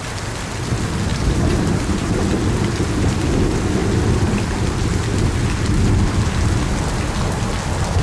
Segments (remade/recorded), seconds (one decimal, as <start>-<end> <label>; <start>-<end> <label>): 0.0-1.1 recorded; 1.1-2.2 remade; 2.2-8.0 recorded